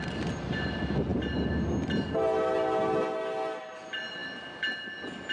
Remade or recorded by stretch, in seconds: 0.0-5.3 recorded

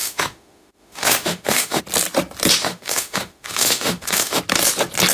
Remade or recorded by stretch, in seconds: 0.0-1.8 remade; 1.8-2.6 recorded; 2.6-4.4 remade; 4.4-5.1 recorded

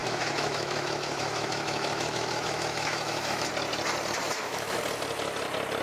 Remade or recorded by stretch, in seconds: 0.0-3.5 remade; 3.5-4.2 recorded; 4.2-4.8 remade; 4.8-5.8 recorded